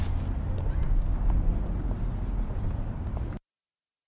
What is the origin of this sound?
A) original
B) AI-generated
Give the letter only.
A